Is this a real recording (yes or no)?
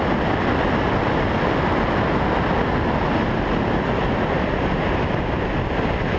yes